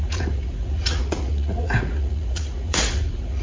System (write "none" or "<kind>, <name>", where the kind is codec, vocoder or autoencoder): vocoder, Vocos